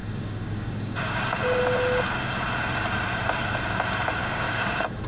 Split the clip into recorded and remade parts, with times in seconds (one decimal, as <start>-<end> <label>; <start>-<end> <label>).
0.0-1.6 remade; 1.6-4.2 recorded; 4.2-5.1 remade